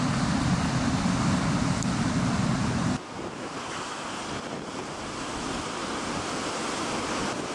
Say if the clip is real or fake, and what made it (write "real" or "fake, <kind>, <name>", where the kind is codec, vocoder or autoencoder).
real